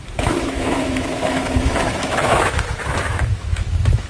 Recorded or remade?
remade